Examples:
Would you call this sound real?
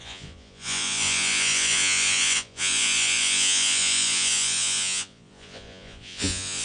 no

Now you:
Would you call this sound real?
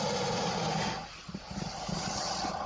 yes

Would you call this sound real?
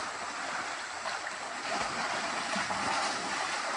yes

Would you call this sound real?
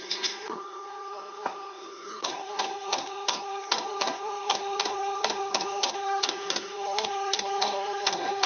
no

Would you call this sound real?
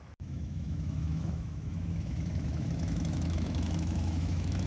no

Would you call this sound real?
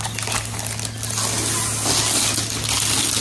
yes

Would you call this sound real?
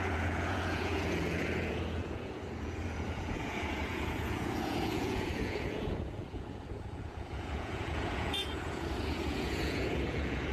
no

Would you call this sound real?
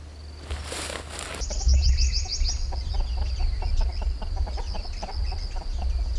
yes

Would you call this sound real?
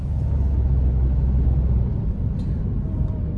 yes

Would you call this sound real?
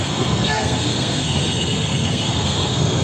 no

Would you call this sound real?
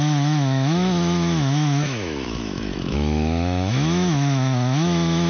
no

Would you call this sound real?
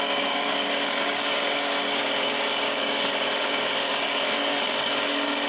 no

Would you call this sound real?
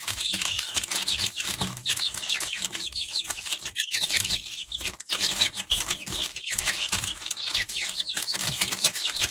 no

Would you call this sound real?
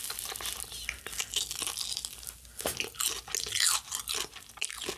yes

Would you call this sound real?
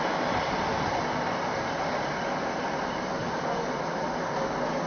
yes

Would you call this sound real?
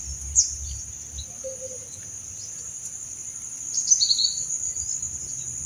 yes